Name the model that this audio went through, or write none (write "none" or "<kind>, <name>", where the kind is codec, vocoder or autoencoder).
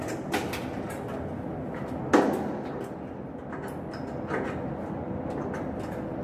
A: none